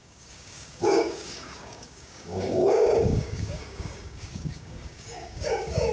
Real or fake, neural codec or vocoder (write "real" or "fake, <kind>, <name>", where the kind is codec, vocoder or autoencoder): fake, codec, DAC